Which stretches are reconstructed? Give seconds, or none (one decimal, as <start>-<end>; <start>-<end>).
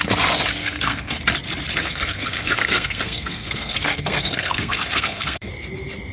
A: 0.6-1.2; 1.8-5.5